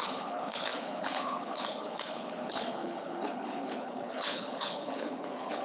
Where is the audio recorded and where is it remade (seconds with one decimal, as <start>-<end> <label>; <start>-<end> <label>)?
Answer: 0.0-5.6 remade